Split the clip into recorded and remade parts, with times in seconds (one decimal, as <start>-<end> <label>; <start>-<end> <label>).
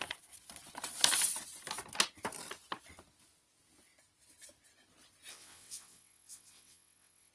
0.0-5.3 recorded; 5.3-7.3 remade